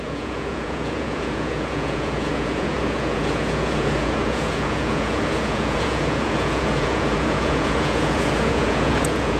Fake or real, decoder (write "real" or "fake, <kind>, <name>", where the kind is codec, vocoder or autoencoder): fake, vocoder, Vocos